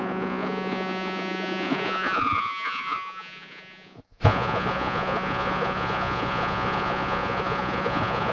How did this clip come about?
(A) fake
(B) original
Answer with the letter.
A